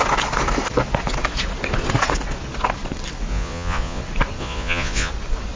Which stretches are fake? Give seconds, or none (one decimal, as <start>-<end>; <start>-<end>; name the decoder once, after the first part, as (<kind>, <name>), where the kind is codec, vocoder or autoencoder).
3.3-4.0 (vocoder, Vocos); 4.4-5.1